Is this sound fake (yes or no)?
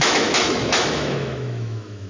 yes